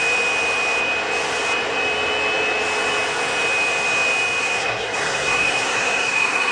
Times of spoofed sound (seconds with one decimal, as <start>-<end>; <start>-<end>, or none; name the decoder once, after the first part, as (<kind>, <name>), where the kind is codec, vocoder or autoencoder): 4.4-6.5 (codec, SNAC)